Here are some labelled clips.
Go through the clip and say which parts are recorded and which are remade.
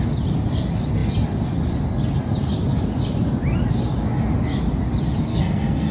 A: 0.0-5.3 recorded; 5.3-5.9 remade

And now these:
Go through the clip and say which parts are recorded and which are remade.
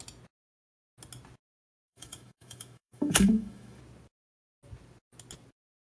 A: 0.0-1.6 recorded; 1.6-3.8 remade; 3.8-6.0 recorded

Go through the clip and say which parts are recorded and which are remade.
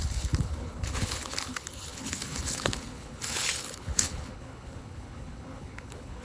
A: 0.0-6.2 remade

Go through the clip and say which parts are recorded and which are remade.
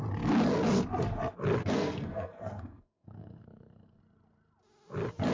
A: 0.0-1.6 recorded; 1.6-4.0 remade; 4.0-5.3 recorded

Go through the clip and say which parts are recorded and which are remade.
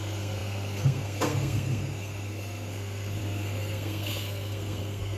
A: 0.0-5.2 remade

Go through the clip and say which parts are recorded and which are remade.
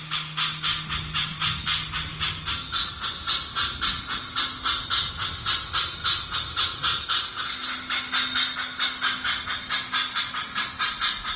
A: 0.0-11.4 recorded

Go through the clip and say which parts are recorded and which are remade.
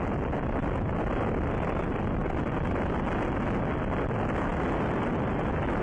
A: 0.0-5.8 recorded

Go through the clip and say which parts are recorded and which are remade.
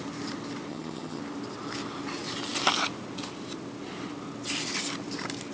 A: 0.0-0.7 recorded; 0.7-1.2 remade; 1.2-5.5 recorded